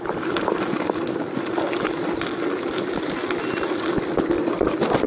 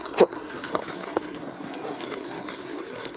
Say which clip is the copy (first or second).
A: second